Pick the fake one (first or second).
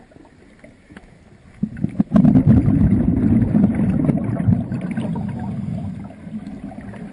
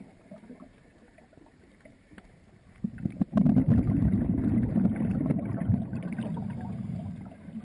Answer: second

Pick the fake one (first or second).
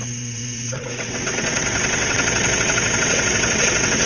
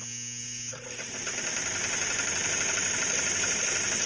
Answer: first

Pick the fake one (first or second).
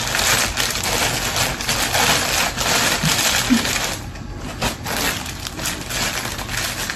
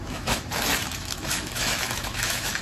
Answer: second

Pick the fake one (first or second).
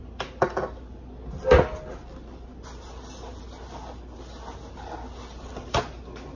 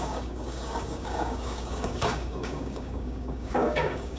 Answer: second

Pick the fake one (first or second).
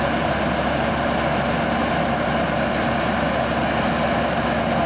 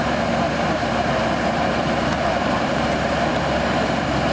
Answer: second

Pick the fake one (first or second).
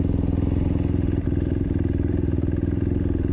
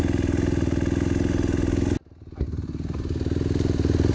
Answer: first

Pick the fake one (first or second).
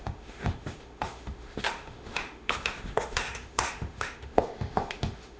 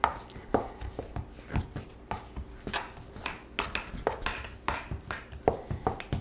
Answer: first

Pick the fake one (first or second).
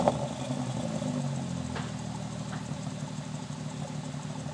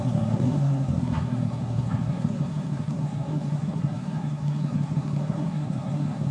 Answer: second